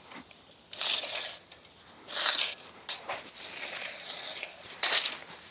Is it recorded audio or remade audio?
recorded